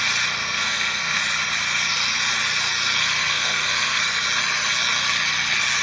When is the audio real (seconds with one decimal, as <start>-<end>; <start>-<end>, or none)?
0.0-0.4; 1.2-3.0; 4.0-5.8